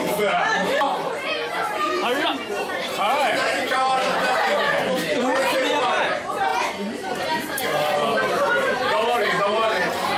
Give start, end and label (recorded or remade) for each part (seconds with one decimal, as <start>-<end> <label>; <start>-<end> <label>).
0.0-10.2 remade

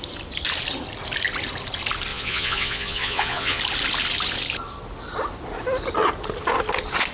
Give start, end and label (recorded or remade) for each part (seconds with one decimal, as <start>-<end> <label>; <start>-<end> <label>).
0.0-2.1 recorded; 2.1-3.6 remade; 3.6-7.1 recorded

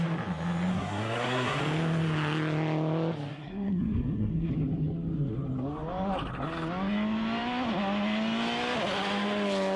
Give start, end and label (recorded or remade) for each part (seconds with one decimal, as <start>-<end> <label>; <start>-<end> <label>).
0.0-0.7 recorded; 0.7-1.6 remade; 1.6-3.3 recorded; 3.3-4.5 remade; 4.5-9.8 recorded

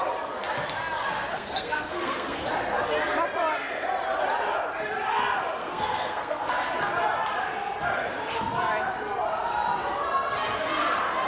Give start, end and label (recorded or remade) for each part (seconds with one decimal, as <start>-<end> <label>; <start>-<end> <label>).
0.0-1.3 recorded; 1.3-2.4 remade; 2.4-5.6 recorded; 5.6-6.5 remade; 6.5-11.3 recorded